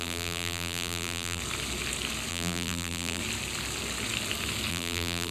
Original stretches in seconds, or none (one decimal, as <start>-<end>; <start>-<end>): 1.4-2.3; 3.2-4.7